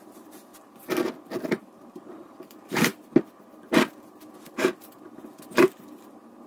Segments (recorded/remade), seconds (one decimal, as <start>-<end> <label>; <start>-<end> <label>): 0.0-0.5 remade; 0.5-1.6 recorded; 1.6-2.9 remade; 2.9-6.5 recorded